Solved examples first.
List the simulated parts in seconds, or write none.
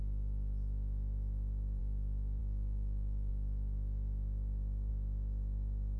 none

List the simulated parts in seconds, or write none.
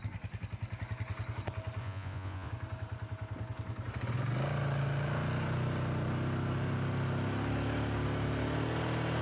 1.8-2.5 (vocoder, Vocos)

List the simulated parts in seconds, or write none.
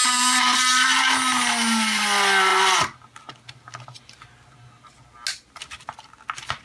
none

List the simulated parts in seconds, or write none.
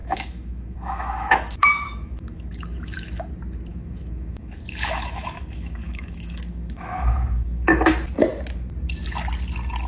0.0-3.3 (autoencoder, DAC-VAE); 3.7-7.9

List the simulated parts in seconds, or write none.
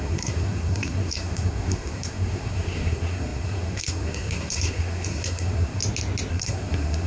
0.0-5.8 (codec, SNAC); 6.3-7.1